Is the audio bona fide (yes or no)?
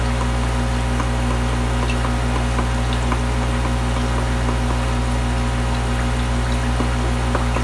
yes